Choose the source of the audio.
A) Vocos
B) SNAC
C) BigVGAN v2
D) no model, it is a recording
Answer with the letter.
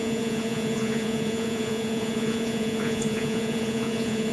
A